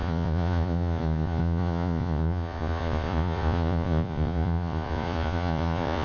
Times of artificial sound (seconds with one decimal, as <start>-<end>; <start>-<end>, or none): 0.0-6.0